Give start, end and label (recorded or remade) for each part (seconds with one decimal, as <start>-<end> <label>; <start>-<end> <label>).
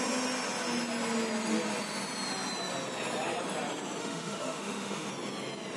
0.0-4.0 recorded; 4.0-5.1 remade; 5.1-5.8 recorded